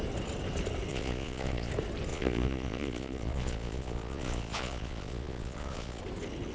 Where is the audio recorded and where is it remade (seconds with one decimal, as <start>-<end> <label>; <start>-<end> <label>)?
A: 0.0-0.9 recorded; 0.9-1.7 remade; 1.7-2.1 recorded; 2.1-6.0 remade; 6.0-6.5 recorded